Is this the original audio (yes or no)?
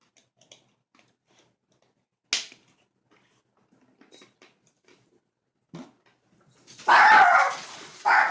yes